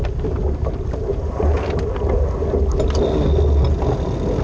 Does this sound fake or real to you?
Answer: real